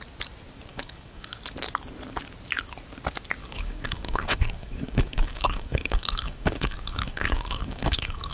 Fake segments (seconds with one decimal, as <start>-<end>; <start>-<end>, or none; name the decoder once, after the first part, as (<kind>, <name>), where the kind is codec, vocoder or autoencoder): 0.7-1.3 (codec, DAC); 3.4-8.3